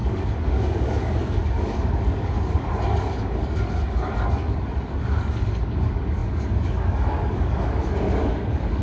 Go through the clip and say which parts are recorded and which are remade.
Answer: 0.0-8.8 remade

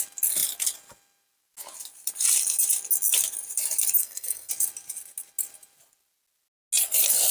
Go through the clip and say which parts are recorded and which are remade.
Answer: 0.0-4.0 recorded; 4.0-4.5 remade; 4.5-7.3 recorded

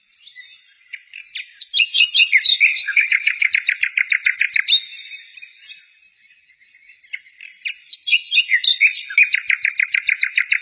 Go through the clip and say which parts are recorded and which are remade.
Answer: 0.0-2.7 recorded; 2.7-3.5 remade; 3.5-10.6 recorded

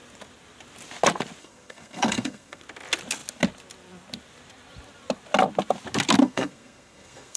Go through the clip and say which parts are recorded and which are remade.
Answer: 0.0-1.4 recorded; 1.4-2.6 remade; 2.6-6.2 recorded; 6.2-7.4 remade

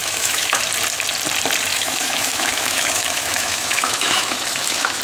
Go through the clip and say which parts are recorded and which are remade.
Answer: 0.0-0.6 remade; 0.6-1.7 recorded; 1.7-5.0 remade

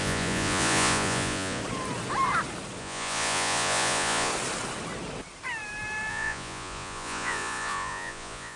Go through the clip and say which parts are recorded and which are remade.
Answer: 0.0-1.6 remade; 1.6-2.8 recorded; 2.8-4.3 remade; 4.3-6.1 recorded; 6.1-8.6 remade

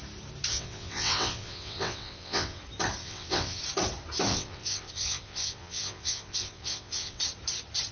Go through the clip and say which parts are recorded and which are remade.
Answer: 0.0-0.5 recorded; 0.5-2.6 remade; 2.6-3.0 recorded; 3.0-3.6 remade; 3.6-4.3 recorded; 4.3-7.2 remade; 7.2-7.9 recorded